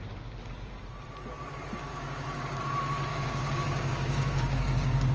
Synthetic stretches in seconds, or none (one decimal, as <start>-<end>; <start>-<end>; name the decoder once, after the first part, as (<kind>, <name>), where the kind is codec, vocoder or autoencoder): 1.9-2.6 (codec, DAC); 3.1-5.1